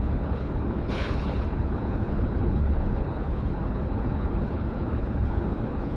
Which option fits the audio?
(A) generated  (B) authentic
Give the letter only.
A